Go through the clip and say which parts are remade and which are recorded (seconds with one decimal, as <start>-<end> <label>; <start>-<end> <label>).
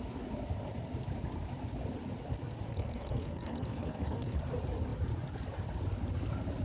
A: 0.0-2.7 recorded; 2.7-4.4 remade; 4.4-6.6 recorded